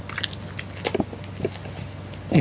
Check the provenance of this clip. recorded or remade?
recorded